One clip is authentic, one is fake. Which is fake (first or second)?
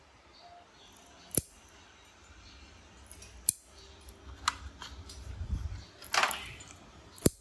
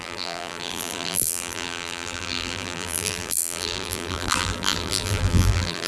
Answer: second